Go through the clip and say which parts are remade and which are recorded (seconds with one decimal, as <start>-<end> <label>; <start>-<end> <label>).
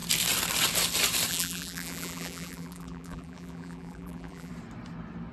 0.0-1.3 recorded; 1.3-4.5 remade; 4.5-5.3 recorded